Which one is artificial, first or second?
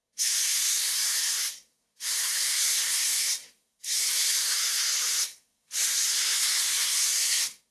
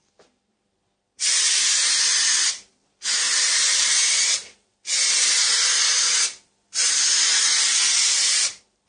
first